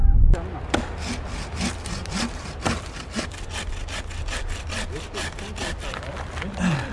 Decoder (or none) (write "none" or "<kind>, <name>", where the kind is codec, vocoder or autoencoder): none